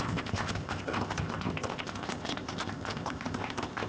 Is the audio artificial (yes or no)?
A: yes